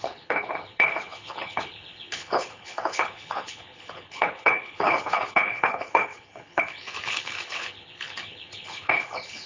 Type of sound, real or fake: fake